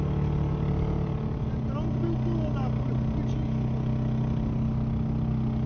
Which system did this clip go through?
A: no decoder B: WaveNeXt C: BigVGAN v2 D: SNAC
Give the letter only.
A